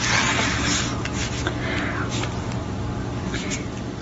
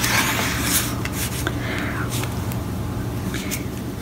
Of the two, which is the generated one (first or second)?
second